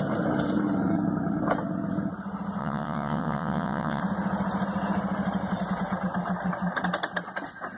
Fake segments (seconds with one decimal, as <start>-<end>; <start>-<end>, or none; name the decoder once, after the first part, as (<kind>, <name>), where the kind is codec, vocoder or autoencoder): 2.6-4.0 (vocoder, WaveNeXt)